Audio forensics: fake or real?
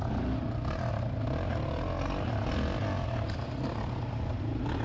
real